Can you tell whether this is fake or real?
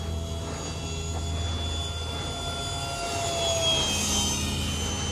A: real